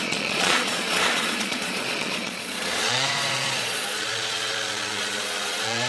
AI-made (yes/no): yes